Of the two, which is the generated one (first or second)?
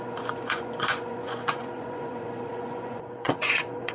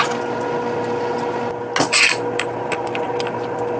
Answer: first